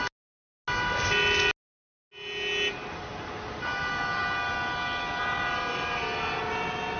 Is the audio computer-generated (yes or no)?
no